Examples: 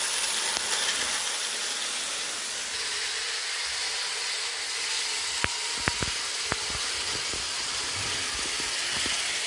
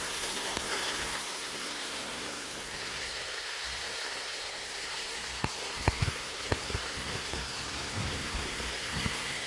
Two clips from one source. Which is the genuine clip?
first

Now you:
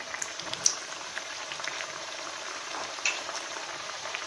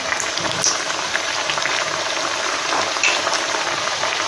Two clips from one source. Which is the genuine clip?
second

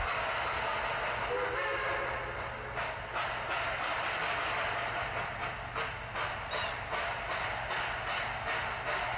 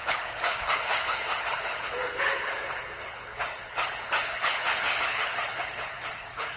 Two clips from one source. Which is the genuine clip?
first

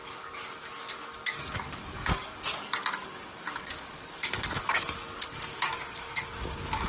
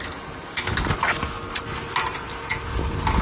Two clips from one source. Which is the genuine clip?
second